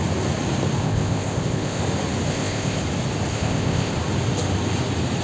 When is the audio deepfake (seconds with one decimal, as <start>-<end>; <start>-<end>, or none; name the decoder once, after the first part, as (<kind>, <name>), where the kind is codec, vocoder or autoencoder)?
0.8-1.8 (codec, ZipCodec); 2.3-2.8; 3.3-3.9

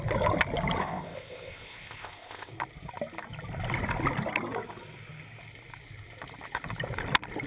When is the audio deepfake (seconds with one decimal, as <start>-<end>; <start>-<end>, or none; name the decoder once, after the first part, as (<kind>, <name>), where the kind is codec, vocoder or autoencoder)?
0.8-2.5 (codec, ZipCodec)

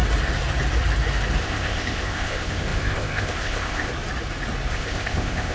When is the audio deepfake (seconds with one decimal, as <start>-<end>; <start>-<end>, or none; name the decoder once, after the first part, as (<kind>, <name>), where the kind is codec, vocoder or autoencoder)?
1.4-3.9 (codec, ZipCodec); 4.7-5.5

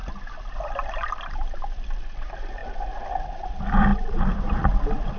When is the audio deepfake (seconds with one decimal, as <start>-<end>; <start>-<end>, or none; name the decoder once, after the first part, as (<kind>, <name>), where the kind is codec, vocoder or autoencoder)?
none

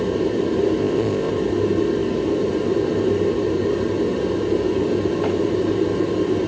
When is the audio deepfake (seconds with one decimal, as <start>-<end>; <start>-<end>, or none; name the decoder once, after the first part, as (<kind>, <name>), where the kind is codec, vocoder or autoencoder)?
0.8-1.3 (codec, ZipCodec)